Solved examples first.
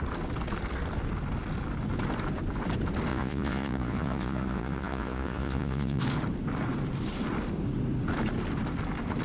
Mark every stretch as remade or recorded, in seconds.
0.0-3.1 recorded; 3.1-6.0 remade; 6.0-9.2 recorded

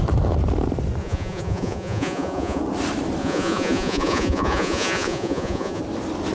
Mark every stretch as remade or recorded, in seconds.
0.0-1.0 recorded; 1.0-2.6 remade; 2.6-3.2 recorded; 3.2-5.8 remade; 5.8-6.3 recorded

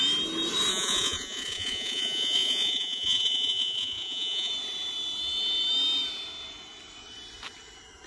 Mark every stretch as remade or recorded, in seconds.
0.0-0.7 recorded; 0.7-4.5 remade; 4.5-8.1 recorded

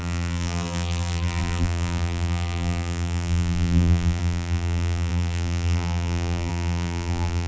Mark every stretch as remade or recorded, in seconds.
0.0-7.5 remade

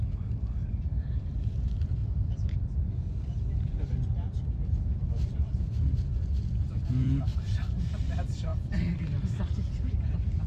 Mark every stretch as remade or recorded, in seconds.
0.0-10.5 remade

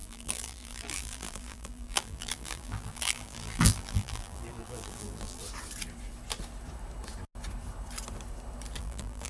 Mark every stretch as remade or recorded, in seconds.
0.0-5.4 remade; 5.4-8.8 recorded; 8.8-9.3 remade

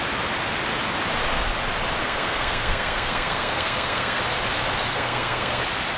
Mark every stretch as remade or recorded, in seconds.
0.0-2.0 recorded; 2.0-4.2 remade; 4.2-4.9 recorded; 4.9-5.6 remade; 5.6-6.0 recorded